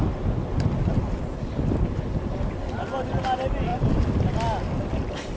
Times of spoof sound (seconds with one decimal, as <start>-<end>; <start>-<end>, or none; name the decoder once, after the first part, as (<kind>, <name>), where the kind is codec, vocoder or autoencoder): none